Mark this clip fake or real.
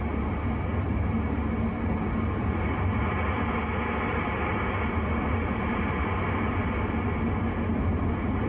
real